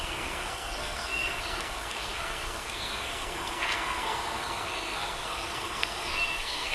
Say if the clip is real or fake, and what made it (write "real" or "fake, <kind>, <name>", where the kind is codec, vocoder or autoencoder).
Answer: fake, codec, SNAC